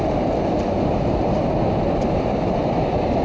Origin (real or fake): real